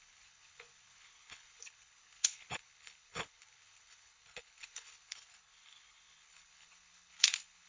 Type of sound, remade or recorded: remade